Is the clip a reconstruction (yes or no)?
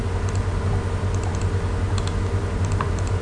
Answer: no